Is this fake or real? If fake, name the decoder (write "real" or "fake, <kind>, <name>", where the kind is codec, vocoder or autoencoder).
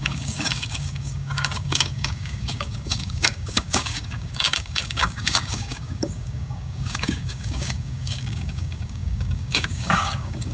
fake, codec, DAC